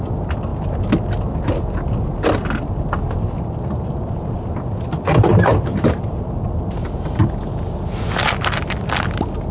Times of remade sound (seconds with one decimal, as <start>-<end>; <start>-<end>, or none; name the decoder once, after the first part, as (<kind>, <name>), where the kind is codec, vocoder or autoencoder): none